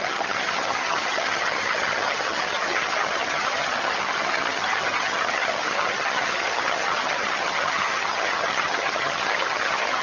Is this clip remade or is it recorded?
remade